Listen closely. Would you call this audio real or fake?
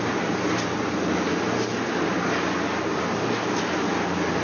real